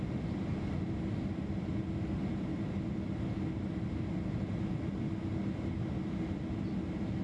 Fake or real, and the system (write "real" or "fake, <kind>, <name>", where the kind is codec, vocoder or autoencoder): real